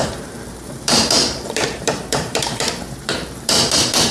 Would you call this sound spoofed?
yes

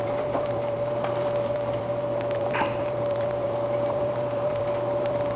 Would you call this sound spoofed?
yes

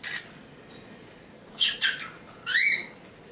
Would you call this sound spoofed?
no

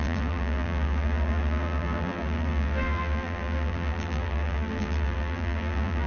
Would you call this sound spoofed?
yes